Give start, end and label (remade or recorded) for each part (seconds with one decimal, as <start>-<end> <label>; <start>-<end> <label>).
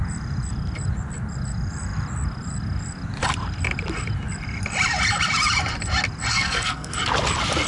0.0-6.3 recorded; 6.3-6.9 remade; 6.9-7.7 recorded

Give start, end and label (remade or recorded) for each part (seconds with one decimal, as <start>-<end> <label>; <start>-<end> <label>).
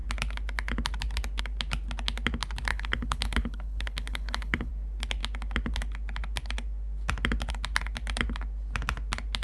0.0-2.7 recorded; 2.7-4.7 remade; 4.7-9.4 recorded